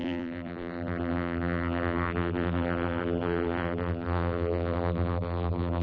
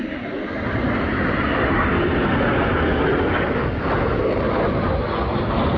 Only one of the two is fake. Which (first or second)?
first